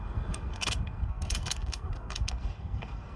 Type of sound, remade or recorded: remade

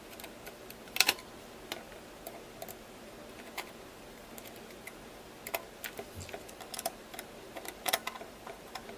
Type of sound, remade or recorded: recorded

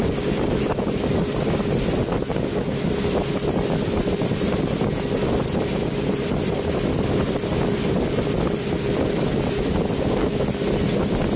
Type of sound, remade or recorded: recorded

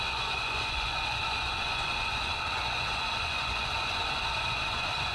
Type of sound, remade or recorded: remade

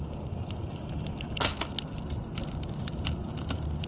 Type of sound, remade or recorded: recorded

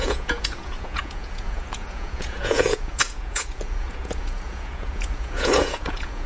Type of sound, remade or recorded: remade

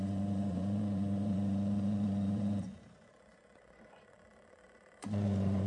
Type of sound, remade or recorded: remade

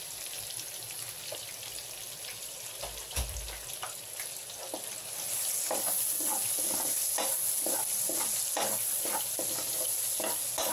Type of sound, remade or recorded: recorded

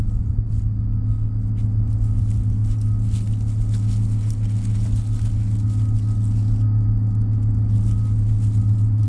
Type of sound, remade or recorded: recorded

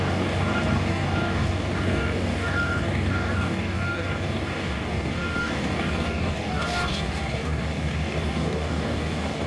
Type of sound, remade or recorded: remade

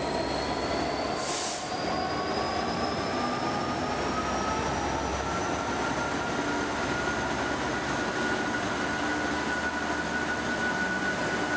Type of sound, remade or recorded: recorded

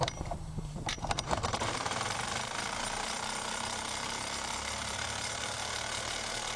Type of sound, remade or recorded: remade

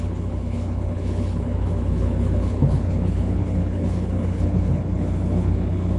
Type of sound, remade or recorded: remade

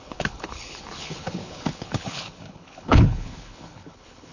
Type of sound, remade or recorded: remade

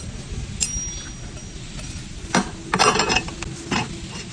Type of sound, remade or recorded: recorded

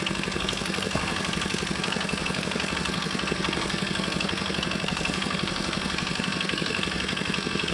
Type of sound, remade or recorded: remade